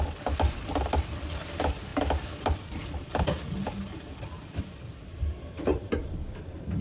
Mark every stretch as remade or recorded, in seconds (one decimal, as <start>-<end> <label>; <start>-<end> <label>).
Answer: 0.0-1.9 remade; 1.9-3.2 recorded; 3.2-6.8 remade